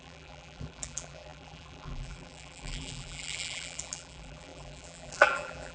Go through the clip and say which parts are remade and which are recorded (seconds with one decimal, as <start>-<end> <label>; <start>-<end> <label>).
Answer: 0.0-5.7 remade